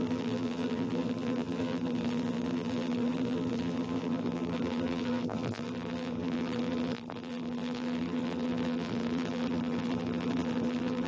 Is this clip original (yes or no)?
no